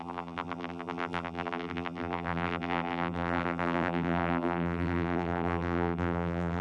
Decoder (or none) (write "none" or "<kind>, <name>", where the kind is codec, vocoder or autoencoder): vocoder, BigVGAN v2